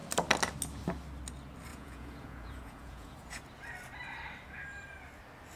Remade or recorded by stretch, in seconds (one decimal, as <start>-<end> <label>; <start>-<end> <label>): 0.0-1.7 recorded; 1.7-3.4 remade; 3.4-5.6 recorded